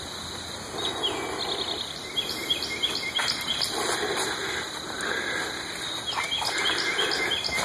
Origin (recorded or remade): recorded